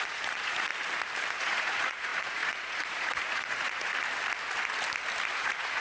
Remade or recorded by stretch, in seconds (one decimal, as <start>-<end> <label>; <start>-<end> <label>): 0.0-0.7 remade; 0.7-1.4 recorded; 1.4-3.9 remade; 3.9-5.3 recorded; 5.3-5.8 remade